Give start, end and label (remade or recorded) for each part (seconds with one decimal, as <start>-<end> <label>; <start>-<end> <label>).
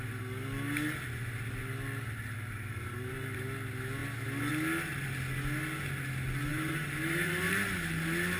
0.0-2.7 recorded; 2.7-3.4 remade; 3.4-6.5 recorded; 6.5-7.8 remade; 7.8-8.4 recorded